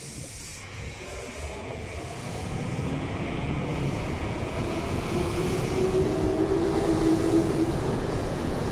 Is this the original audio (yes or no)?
no